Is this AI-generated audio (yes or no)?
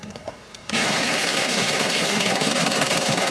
yes